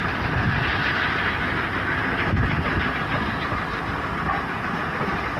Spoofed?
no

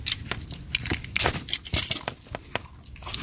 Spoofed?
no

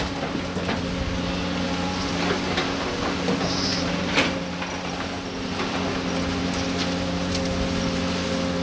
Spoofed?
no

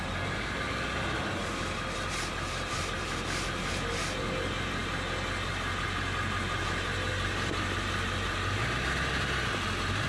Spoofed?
no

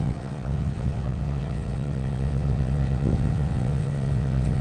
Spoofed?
yes